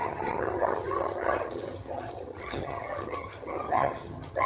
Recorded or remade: remade